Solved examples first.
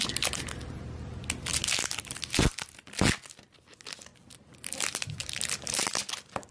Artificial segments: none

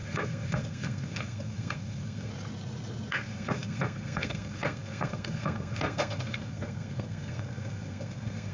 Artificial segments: 0.0-2.3 (codec, SNAC); 3.1-8.5